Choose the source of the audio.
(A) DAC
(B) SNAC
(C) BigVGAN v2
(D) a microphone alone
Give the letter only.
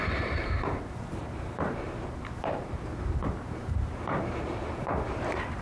C